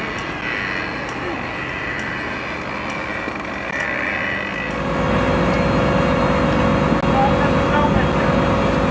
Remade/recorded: recorded